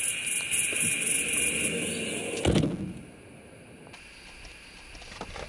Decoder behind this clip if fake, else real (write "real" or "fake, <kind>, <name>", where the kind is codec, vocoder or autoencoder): real